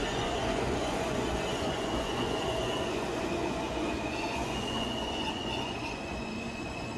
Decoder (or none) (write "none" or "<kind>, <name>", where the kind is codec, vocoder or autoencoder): vocoder, Vocos